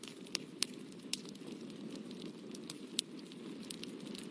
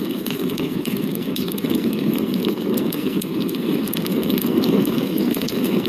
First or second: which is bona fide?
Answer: first